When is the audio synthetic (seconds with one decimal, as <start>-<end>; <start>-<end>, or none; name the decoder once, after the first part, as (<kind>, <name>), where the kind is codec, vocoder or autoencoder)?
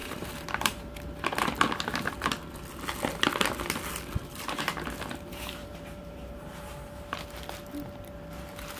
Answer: 0.0-1.0 (vocoder, BigVGAN v2); 5.3-6.5